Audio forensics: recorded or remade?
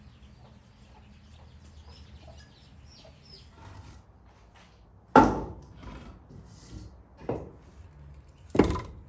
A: recorded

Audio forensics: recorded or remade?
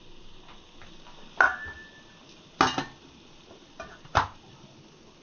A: recorded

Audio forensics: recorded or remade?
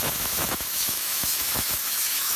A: remade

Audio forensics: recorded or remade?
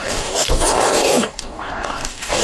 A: remade